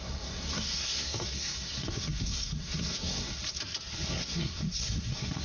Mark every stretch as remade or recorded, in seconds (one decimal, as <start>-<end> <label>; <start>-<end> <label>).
0.0-3.3 remade; 3.3-4.1 recorded; 4.1-5.4 remade